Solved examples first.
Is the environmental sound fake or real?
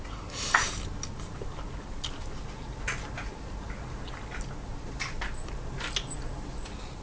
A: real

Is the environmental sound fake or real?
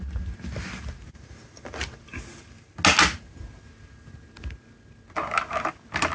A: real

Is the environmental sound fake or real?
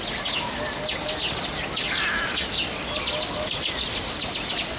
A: real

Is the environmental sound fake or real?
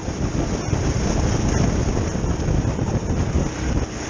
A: real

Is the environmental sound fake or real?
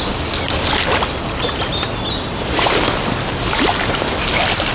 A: real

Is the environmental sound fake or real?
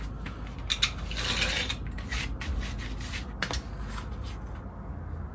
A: real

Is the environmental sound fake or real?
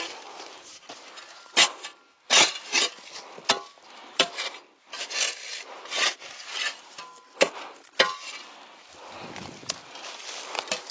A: real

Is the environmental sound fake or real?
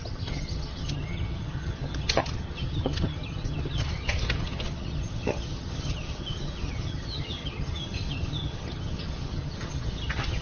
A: fake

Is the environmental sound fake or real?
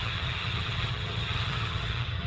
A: fake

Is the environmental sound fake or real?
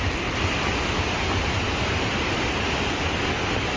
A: real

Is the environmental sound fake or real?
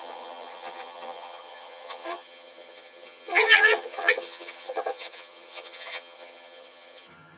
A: fake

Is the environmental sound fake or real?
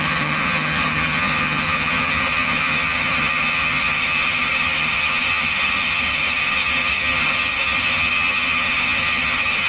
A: fake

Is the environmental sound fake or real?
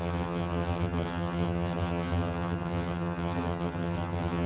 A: fake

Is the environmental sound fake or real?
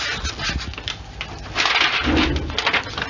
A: real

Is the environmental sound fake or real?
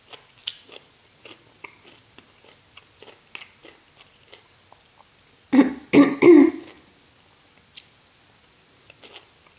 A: real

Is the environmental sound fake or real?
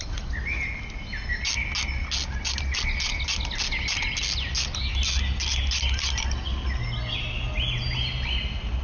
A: real